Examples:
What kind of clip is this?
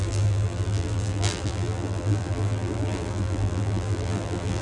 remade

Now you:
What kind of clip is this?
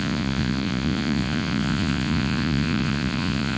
remade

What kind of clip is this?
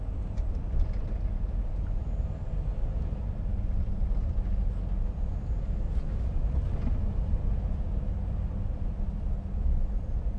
recorded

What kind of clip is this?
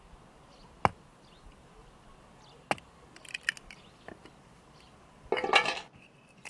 recorded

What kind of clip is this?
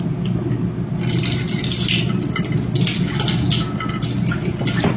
recorded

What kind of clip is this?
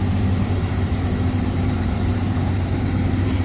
remade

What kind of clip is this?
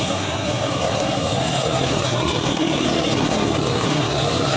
remade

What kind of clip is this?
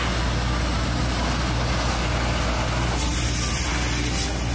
recorded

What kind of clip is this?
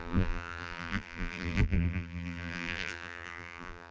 remade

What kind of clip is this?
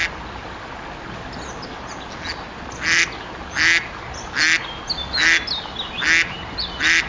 recorded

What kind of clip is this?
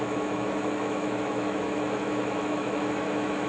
remade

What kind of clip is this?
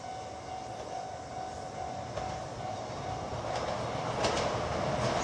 recorded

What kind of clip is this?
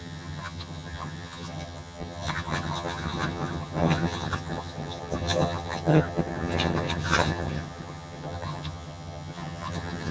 remade